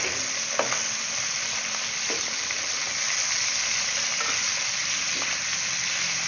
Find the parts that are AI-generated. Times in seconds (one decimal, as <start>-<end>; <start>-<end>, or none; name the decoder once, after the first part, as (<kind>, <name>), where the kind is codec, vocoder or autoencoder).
none